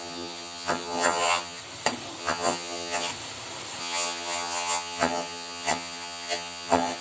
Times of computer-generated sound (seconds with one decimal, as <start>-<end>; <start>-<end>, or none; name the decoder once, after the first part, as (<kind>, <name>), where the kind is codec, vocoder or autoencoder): 0.0-1.6 (vocoder, HiFi-GAN); 2.2-3.1; 3.8-7.0